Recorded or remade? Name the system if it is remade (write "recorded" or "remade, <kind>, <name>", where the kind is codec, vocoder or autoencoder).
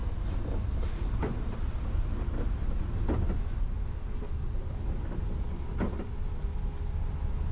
recorded